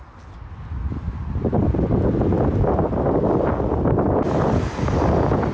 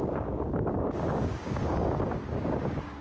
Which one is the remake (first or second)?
second